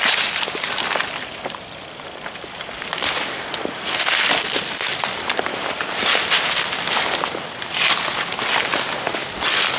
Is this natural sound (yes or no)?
yes